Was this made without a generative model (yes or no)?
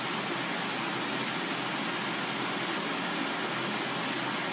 yes